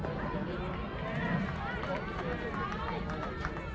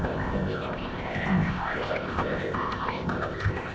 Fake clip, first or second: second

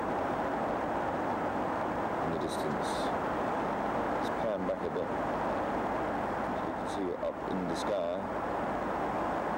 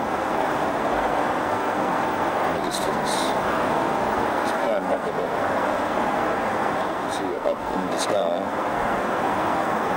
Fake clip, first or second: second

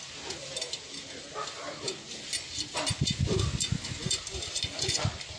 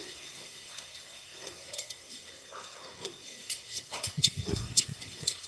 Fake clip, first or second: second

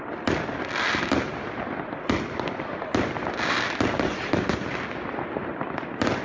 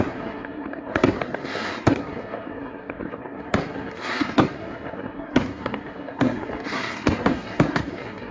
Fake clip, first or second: second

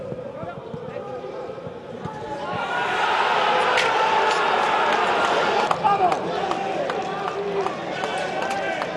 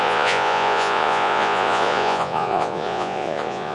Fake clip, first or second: second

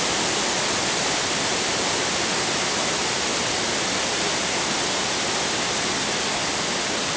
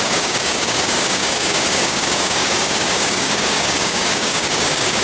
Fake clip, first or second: second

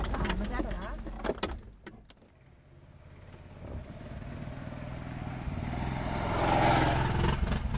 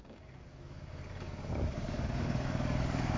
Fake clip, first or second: second